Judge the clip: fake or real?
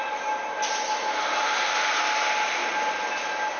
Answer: real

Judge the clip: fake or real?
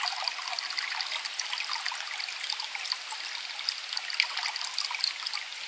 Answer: real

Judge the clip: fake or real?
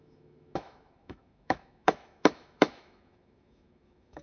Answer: fake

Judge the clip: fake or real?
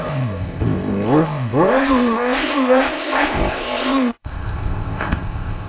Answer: fake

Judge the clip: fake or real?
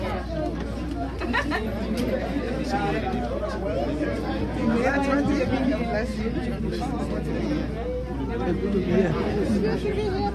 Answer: real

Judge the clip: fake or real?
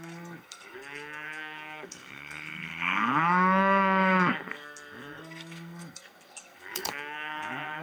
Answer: fake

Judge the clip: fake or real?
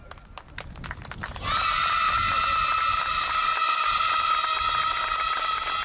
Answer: real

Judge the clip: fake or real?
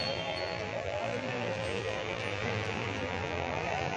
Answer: fake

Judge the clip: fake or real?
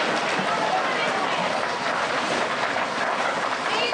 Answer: fake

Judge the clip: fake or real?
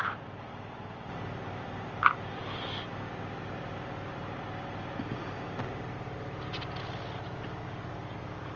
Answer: real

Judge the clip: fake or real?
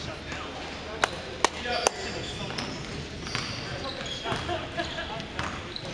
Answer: real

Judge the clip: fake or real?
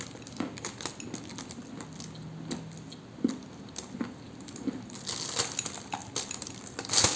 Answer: real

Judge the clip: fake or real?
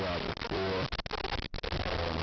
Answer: real